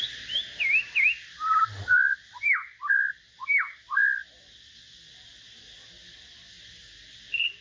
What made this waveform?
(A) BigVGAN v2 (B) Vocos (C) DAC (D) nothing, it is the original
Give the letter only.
D